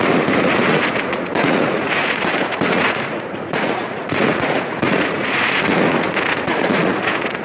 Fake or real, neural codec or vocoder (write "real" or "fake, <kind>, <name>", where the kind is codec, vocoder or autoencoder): fake, vocoder, Vocos